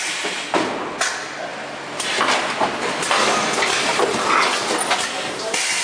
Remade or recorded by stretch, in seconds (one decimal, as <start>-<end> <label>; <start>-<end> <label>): 0.0-5.8 recorded